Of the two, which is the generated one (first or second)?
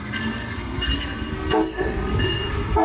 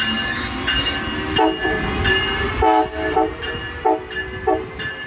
first